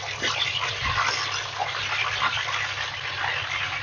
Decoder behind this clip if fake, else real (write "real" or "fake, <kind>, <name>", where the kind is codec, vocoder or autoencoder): real